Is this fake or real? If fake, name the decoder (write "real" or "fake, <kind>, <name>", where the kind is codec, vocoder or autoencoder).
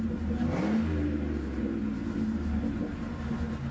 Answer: real